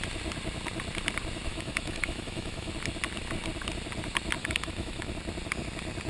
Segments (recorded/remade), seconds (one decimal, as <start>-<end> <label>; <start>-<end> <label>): 0.0-1.5 recorded; 1.5-2.7 remade; 2.7-4.4 recorded; 4.4-5.1 remade; 5.1-6.1 recorded